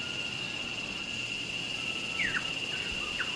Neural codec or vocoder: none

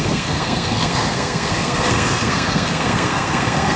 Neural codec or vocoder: codec, SNAC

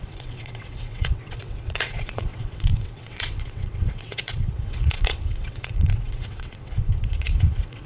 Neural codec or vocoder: vocoder, WaveNeXt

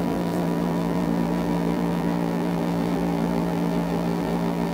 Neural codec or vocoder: vocoder, BigVGAN v2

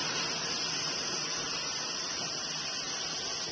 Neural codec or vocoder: none